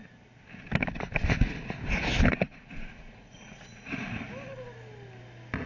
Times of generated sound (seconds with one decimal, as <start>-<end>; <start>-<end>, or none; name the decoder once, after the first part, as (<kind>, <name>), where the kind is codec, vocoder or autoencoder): 2.3-4.2 (vocoder, Vocos)